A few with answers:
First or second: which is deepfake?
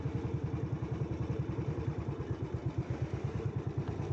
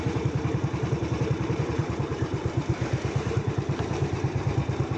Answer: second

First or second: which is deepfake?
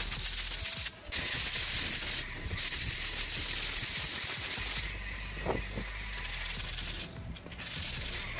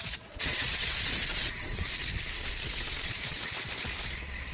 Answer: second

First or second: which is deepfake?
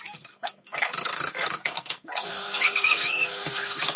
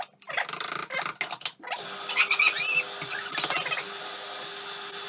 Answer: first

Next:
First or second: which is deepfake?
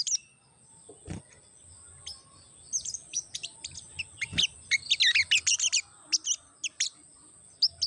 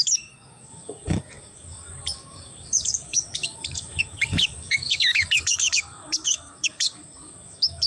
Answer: second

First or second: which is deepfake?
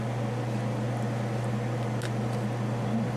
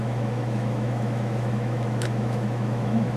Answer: second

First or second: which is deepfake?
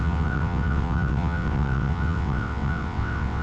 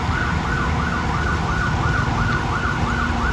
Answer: first